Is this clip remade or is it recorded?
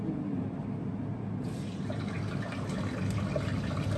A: recorded